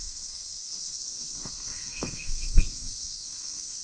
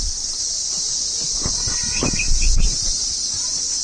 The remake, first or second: first